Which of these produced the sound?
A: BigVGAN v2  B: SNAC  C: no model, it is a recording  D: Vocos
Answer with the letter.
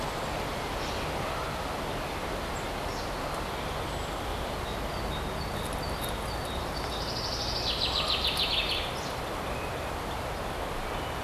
C